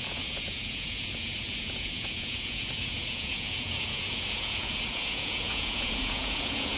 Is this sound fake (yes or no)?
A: yes